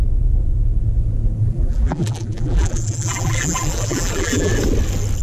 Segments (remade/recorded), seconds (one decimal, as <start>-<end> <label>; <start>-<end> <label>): 0.0-1.4 recorded; 1.4-4.5 remade; 4.5-5.2 recorded